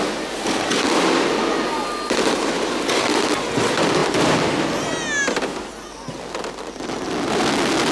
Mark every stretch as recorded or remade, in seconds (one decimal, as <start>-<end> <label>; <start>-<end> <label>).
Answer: 0.0-7.9 recorded

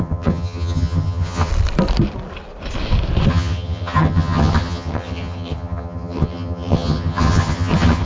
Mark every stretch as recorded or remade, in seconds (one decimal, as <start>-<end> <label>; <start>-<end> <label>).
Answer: 0.0-1.5 remade; 1.5-3.3 recorded; 3.3-8.1 remade

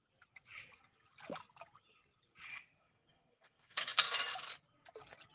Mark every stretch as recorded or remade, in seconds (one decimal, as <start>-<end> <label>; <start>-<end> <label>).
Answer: 0.0-2.5 recorded; 2.5-4.2 remade; 4.2-5.3 recorded

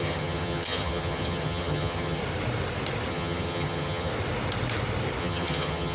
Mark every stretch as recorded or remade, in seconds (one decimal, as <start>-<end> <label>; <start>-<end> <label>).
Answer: 0.0-2.2 remade; 2.2-3.1 recorded; 3.1-4.1 remade; 4.1-5.2 recorded; 5.2-5.9 remade

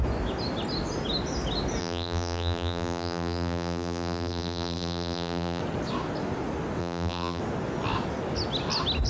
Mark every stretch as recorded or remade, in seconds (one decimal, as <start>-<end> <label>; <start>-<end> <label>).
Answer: 0.0-1.8 recorded; 1.8-5.6 remade; 5.6-6.8 recorded; 6.8-7.4 remade; 7.4-9.1 recorded